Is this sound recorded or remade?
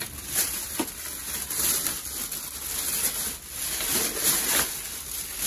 recorded